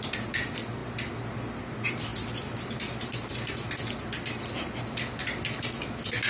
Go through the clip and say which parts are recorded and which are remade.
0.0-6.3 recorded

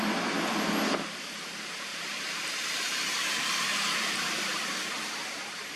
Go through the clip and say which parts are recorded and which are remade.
0.0-5.8 recorded

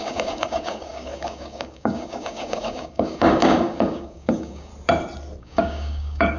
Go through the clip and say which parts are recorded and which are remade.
0.0-4.7 remade; 4.7-5.4 recorded; 5.4-6.4 remade

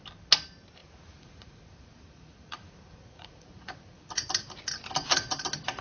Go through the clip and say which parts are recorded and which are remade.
0.0-0.8 recorded; 0.8-4.3 remade; 4.3-5.8 recorded

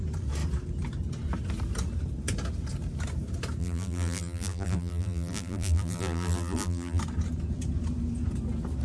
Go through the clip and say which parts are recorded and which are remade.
0.0-3.6 recorded; 3.6-7.0 remade; 7.0-8.8 recorded

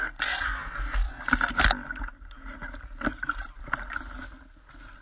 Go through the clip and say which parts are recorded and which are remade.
0.0-5.0 recorded

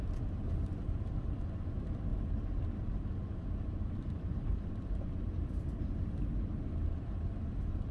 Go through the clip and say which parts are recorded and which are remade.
0.0-7.9 remade